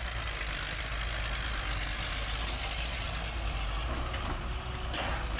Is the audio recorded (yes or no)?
yes